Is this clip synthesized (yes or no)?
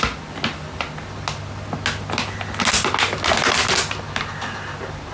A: no